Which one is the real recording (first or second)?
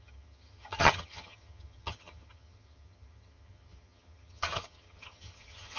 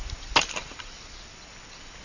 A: second